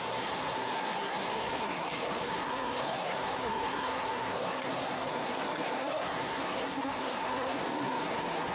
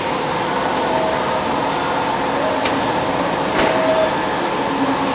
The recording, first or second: second